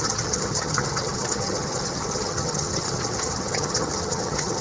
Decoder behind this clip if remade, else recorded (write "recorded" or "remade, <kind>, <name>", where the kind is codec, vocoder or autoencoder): remade, vocoder, HiFi-GAN